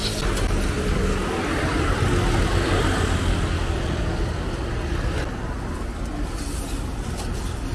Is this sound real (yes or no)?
yes